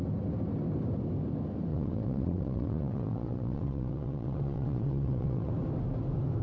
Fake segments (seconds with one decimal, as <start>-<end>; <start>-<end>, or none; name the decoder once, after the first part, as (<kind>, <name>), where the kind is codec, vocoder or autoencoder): 1.7-5.5 (vocoder, WaveNeXt)